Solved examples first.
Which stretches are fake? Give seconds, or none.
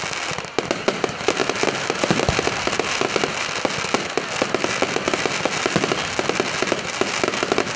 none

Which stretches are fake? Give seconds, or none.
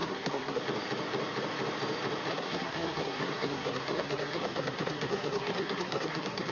0.0-0.6 (codec, SNAC); 2.3-6.5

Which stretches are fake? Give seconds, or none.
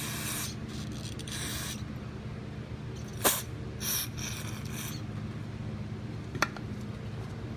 none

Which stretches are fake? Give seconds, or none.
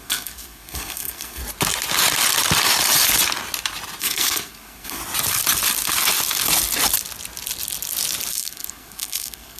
0.0-1.4 (codec, SNAC); 4.0-5.0; 8.3-9.6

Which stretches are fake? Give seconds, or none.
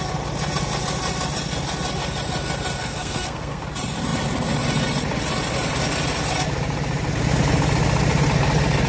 2.8-3.6 (codec, SNAC)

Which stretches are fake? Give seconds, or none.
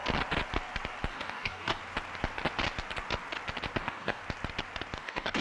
1.1-1.8 (codec, DAC); 3.8-4.2; 5.0-5.4